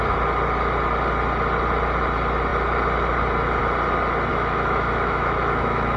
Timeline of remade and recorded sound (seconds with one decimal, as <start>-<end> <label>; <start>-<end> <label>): 0.0-4.3 recorded; 4.3-6.0 remade